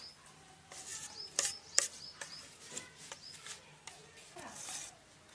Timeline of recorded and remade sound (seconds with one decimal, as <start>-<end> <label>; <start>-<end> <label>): 0.0-0.9 recorded; 0.9-2.5 remade; 2.5-5.3 recorded